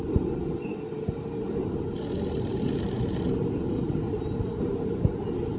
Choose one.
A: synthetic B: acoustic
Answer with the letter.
B